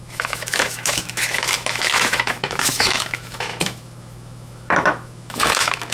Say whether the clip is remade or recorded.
remade